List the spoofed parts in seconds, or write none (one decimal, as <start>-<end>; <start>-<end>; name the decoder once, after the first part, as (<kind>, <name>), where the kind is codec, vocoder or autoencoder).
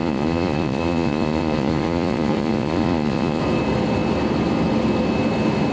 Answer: 0.0-3.4 (vocoder, Vocos)